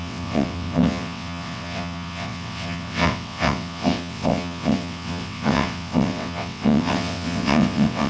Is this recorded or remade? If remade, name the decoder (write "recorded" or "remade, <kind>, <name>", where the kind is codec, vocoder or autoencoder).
remade, vocoder, WaveNeXt